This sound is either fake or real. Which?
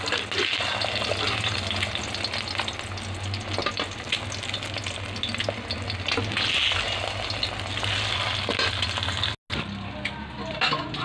real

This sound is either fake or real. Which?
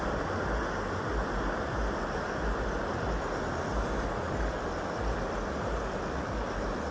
real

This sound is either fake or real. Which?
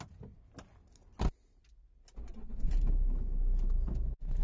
real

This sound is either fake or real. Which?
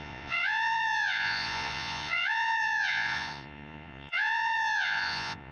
fake